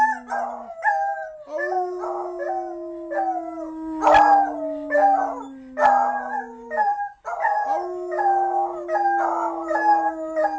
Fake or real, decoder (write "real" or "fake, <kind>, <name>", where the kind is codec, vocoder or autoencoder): real